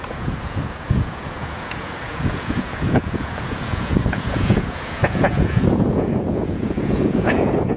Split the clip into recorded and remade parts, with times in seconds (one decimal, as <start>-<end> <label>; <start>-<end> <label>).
0.0-7.8 remade